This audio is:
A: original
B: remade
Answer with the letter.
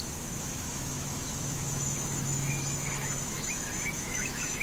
B